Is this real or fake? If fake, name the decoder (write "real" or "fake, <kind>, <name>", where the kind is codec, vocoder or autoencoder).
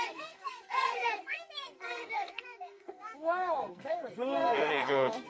fake, codec, SNAC